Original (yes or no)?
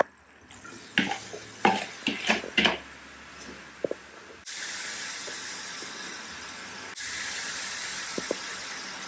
yes